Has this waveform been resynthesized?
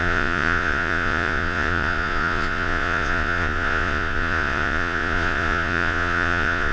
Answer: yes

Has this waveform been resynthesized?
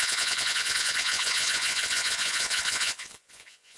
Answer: yes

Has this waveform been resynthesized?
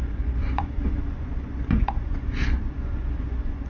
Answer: yes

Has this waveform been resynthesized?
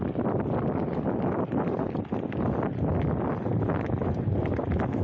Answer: no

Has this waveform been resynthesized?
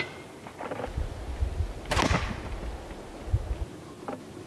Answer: no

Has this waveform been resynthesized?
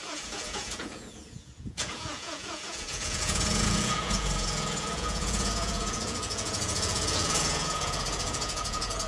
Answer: yes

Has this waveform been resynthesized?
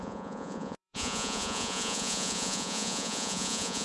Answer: yes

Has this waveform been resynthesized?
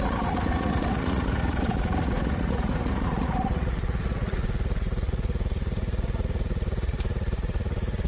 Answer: yes